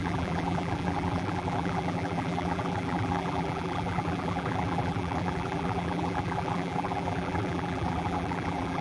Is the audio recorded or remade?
remade